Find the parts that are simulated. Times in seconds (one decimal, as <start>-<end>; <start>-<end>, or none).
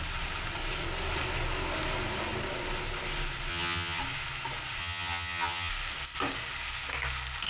3.5-4.0; 4.8-5.7